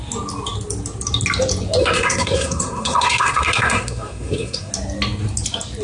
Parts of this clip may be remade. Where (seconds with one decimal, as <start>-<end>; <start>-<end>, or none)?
1.8-4.7